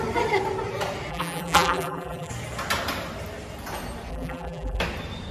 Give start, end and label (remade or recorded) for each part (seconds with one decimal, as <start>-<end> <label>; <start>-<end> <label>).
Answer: 0.0-1.1 recorded; 1.1-2.3 remade; 2.3-4.1 recorded; 4.1-4.8 remade; 4.8-5.3 recorded